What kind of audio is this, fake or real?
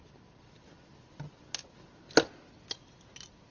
real